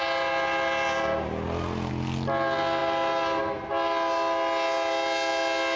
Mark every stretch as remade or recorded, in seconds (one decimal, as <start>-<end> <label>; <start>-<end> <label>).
0.0-5.8 recorded